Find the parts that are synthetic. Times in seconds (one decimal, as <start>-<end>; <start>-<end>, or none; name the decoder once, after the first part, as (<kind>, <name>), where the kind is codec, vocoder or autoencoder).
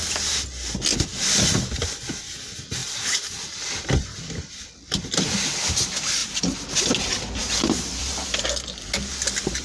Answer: 2.8-4.7 (vocoder, BigVGAN v2); 7.4-8.4